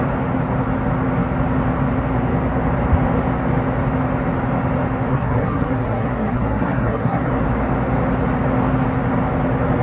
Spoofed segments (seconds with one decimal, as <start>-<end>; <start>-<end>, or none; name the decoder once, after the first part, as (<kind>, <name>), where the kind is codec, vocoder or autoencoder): 5.1-7.3 (codec, SNAC)

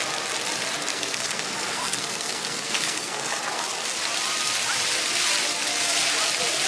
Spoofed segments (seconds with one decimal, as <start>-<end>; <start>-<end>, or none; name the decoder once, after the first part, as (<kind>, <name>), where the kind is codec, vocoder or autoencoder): 0.9-3.8 (codec, SNAC)